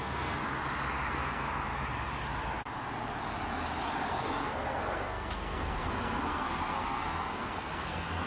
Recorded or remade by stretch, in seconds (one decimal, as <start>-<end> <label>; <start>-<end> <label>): 0.0-0.4 remade; 0.4-1.1 recorded; 1.1-1.7 remade; 1.7-4.1 recorded; 4.1-8.3 remade